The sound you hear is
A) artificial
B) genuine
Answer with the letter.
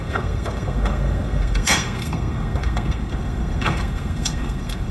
A